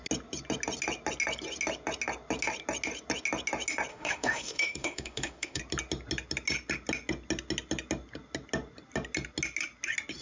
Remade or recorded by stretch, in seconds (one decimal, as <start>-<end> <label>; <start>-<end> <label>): 0.0-3.9 recorded; 3.9-5.6 remade; 5.6-10.2 recorded